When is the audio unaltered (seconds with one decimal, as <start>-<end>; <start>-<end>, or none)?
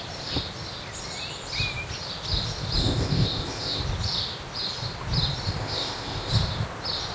0.0-2.8; 3.8-5.6; 6.3-7.1